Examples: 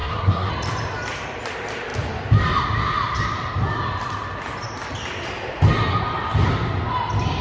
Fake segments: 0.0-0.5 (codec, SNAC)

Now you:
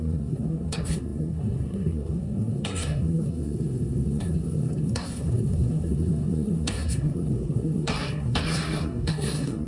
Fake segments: 0.0-9.7 (codec, SNAC)